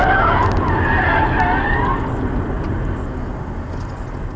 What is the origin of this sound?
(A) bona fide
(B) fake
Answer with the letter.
A